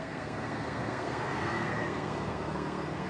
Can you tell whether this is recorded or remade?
remade